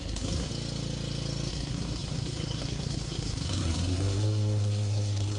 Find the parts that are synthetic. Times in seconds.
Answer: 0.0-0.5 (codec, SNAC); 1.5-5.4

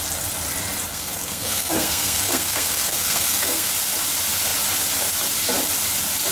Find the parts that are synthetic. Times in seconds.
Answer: 0.9-3.7 (codec, SNAC)

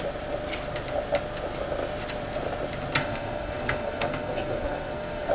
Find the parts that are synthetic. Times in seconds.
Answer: 3.0-5.3 (codec, SNAC)

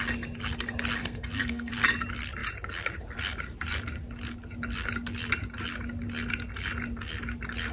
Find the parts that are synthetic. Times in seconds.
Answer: 1.0-1.7 (codec, SNAC)